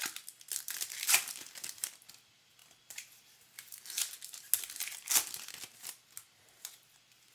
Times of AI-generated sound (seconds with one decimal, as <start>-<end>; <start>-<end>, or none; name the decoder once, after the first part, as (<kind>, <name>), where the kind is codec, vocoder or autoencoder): none